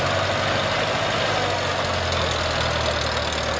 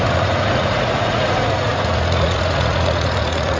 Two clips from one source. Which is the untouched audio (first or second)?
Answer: first